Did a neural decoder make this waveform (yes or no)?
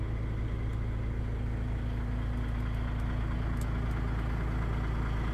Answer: no